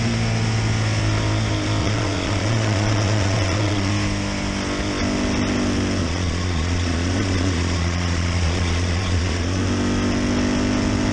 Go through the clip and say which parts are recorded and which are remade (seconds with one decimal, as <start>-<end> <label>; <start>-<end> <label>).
0.0-1.8 recorded; 1.8-3.9 remade; 3.9-6.0 recorded; 6.0-9.6 remade; 9.6-11.1 recorded